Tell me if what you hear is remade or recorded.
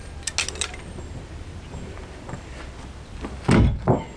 recorded